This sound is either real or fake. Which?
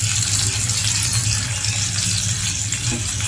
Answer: real